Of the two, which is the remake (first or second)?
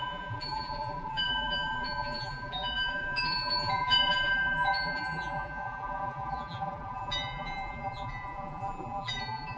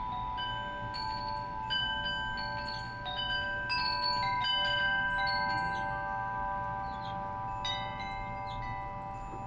first